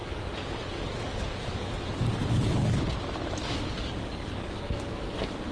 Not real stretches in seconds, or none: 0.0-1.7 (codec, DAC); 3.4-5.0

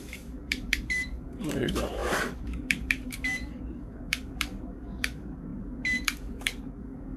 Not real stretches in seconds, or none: 0.0-7.2 (codec, DAC)

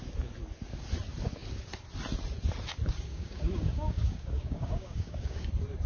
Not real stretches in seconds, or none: 3.1-5.5 (codec, DAC)

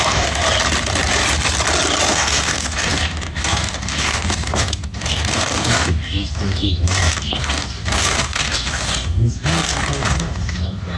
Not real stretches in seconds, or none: 0.0-0.4 (codec, DAC); 2.1-11.0

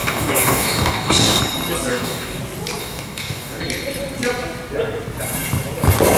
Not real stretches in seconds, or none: 0.0-1.4 (codec, DAC); 1.9-2.4; 2.8-3.6

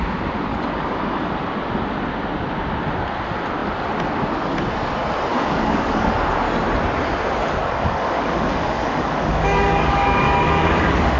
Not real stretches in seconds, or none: 0.5-1.3 (codec, DAC); 5.3-6.1; 7.6-11.2

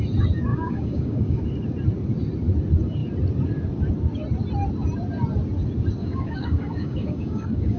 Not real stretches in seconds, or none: 0.5-1.4 (codec, DAC); 6.0-7.8